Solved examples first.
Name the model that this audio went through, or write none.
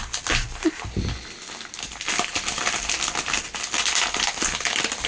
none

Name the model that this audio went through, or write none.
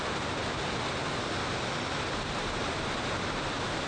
none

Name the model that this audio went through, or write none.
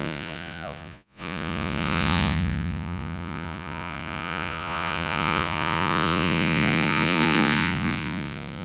vocoder, Vocos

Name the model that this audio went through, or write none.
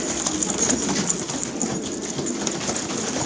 none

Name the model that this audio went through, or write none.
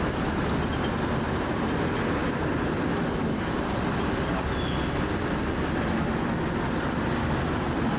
none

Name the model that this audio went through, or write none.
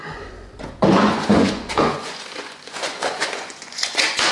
vocoder, Vocos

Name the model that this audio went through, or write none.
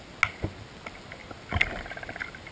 none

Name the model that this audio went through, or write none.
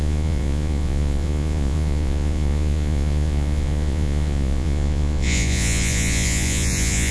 vocoder, Vocos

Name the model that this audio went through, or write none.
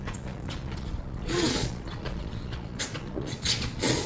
vocoder, Vocos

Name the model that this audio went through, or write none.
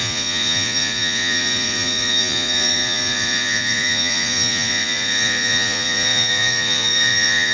vocoder, Vocos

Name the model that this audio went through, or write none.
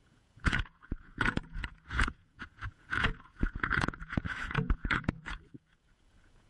vocoder, Vocos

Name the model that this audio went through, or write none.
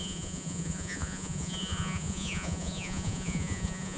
vocoder, Vocos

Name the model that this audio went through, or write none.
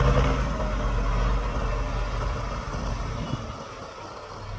none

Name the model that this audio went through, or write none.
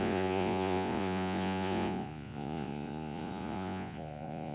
vocoder, Vocos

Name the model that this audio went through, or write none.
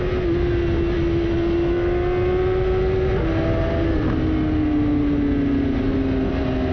none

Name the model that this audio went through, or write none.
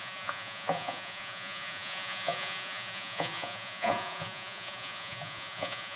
vocoder, Vocos